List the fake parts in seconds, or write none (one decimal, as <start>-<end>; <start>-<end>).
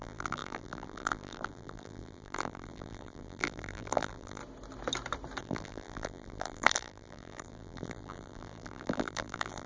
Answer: 0.0-4.4; 5.4-9.7